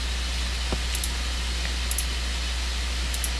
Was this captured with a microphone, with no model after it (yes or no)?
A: yes